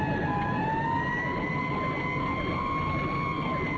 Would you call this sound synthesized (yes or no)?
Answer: no